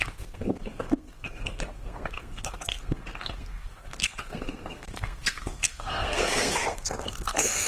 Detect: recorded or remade remade